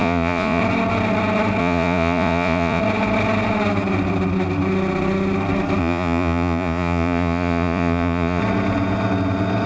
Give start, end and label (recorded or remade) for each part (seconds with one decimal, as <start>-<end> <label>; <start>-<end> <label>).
0.0-0.6 remade; 0.6-1.6 recorded; 1.6-2.8 remade; 2.8-5.8 recorded; 5.8-8.4 remade; 8.4-9.7 recorded